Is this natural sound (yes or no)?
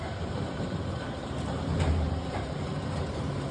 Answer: no